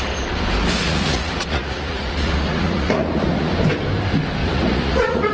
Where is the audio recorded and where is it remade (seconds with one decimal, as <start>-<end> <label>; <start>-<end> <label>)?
0.0-0.8 recorded; 0.8-3.5 remade; 3.5-4.4 recorded; 4.4-5.3 remade

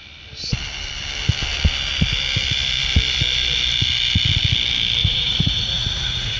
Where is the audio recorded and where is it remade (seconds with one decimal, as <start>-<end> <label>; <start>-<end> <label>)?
0.0-5.0 recorded; 5.0-6.4 remade

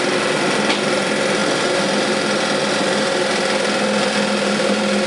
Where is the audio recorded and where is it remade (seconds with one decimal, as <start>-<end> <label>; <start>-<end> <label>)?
0.0-5.1 recorded

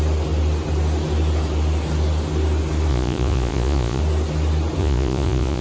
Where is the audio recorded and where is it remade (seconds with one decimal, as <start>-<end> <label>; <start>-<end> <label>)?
0.0-2.9 recorded; 2.9-4.0 remade; 4.0-4.8 recorded; 4.8-5.6 remade

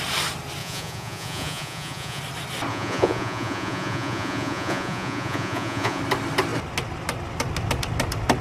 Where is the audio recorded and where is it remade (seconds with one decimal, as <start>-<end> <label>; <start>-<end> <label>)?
0.0-0.6 recorded; 0.6-2.2 remade; 2.2-2.7 recorded; 2.7-6.0 remade; 6.0-8.4 recorded

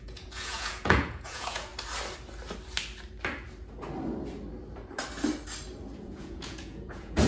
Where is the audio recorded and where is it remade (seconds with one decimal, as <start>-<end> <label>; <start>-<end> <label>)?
0.0-1.7 remade; 1.7-6.0 recorded; 6.0-7.3 remade

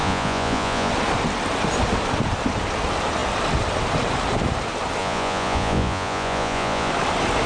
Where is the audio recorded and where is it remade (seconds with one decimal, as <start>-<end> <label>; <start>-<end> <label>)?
0.0-0.9 remade; 0.9-5.0 recorded; 5.0-6.9 remade; 6.9-7.5 recorded

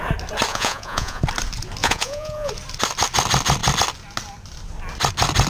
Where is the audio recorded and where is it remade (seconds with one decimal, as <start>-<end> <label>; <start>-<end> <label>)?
0.0-0.5 recorded; 0.5-1.2 remade; 1.2-1.8 recorded; 1.8-2.5 remade; 2.5-5.5 recorded